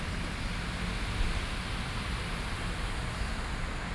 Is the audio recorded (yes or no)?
yes